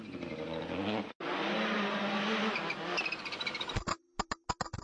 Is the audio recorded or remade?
recorded